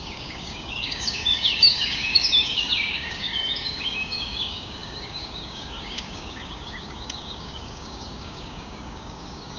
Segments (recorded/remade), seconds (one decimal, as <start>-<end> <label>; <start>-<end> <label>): 0.0-9.6 remade